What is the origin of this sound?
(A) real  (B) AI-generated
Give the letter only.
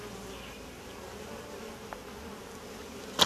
A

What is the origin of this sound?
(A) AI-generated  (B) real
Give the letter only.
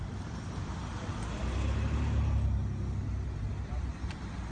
B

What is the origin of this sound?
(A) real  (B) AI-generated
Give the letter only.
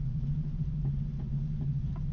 B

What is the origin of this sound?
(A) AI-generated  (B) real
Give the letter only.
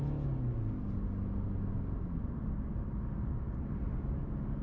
B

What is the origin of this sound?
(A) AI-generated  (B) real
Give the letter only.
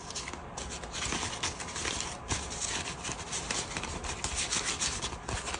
B